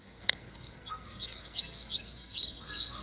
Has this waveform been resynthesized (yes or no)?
yes